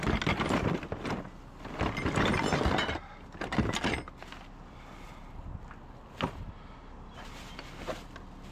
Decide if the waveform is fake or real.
real